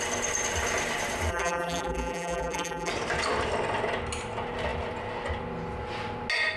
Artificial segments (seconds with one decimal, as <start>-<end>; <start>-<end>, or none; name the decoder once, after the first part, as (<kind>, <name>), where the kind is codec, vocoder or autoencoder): 1.3-2.9 (vocoder, BigVGAN v2)